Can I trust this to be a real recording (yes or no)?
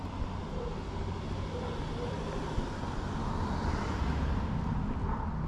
yes